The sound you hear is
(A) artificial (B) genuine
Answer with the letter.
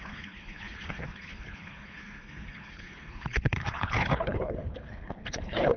A